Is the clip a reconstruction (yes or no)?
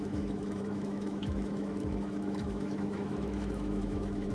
yes